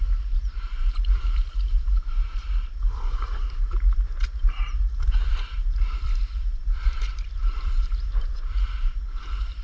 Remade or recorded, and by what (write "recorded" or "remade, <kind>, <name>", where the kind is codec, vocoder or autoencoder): remade, vocoder, BigVGAN v2